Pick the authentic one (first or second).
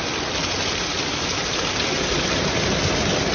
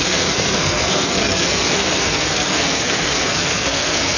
first